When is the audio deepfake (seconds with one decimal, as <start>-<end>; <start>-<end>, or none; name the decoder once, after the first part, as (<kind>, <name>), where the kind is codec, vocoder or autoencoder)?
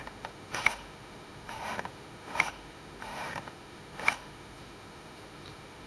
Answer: 0.0-5.9 (autoencoder, DAC-VAE)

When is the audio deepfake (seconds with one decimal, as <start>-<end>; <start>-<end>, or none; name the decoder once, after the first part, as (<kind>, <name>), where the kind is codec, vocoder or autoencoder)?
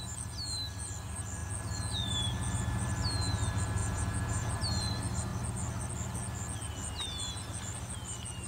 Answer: 3.8-4.6 (vocoder, Vocos)